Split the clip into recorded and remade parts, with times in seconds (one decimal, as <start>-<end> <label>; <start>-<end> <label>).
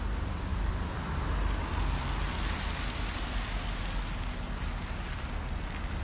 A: 0.0-6.0 recorded